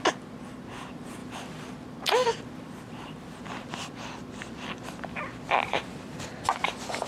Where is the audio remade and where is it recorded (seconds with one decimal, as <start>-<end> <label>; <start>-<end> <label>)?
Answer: 0.0-7.1 recorded